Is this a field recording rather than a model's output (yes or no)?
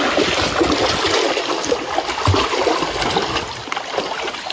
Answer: yes